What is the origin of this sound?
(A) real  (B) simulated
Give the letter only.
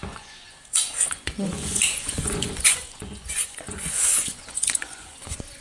B